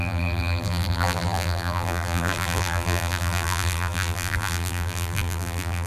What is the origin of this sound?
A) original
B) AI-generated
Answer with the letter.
B